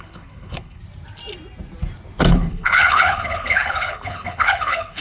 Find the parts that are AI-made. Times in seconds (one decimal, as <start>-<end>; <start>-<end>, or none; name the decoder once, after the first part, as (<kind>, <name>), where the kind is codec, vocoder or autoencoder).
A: 0.0-0.8 (codec, HILCodec); 2.3-5.0